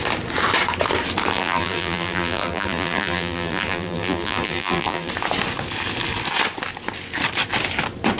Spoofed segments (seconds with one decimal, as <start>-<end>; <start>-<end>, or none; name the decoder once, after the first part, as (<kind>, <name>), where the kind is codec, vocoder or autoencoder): 1.3-5.1 (vocoder, BigVGAN v2)